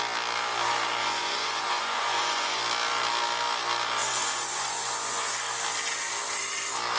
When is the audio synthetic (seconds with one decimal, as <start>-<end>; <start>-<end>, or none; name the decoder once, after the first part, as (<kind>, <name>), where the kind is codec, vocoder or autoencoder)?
1.0-2.6 (vocoder, Vocos); 4.0-5.5

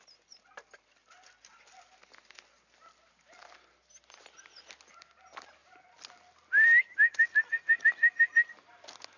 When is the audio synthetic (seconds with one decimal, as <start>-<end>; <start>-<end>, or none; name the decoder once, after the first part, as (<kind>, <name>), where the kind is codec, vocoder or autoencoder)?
none

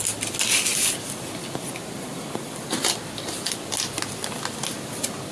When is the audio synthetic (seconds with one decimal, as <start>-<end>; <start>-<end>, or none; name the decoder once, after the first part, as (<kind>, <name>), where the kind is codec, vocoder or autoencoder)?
none

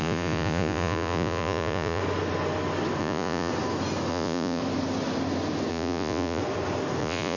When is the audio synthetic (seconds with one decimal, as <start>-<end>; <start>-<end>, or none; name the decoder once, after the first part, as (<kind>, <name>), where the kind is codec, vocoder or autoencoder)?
0.0-2.0 (vocoder, Vocos); 3.0-3.5; 4.1-4.6; 5.7-6.4; 7.0-7.4

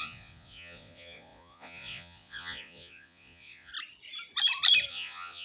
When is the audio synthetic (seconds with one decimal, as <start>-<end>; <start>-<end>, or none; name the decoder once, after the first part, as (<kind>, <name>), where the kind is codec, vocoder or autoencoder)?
0.0-3.7 (vocoder, Vocos); 4.9-5.4